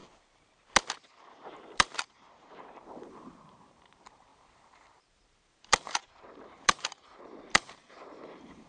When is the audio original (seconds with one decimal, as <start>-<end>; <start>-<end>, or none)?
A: 0.0-0.9